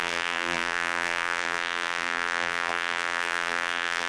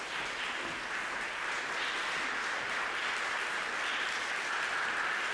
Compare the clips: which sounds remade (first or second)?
first